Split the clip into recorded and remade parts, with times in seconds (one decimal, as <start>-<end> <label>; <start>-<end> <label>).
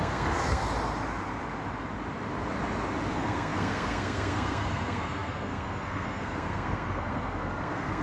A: 0.0-0.6 remade; 0.6-3.1 recorded; 3.1-8.0 remade